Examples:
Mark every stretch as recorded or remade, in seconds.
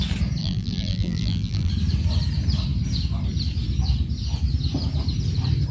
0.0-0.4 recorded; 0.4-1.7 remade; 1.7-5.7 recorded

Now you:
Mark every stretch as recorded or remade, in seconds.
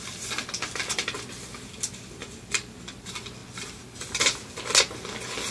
0.0-5.5 recorded